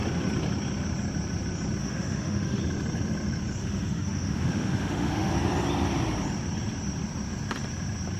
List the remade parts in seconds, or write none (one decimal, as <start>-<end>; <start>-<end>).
1.8-2.6; 3.6-5.3